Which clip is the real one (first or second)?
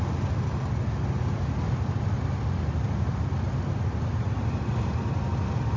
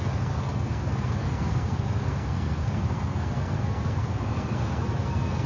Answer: first